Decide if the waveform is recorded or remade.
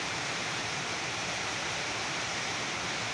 remade